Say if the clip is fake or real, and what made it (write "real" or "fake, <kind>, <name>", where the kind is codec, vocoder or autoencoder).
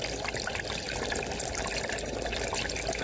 real